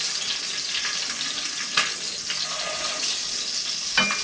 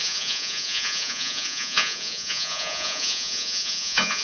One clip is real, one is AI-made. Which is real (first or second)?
first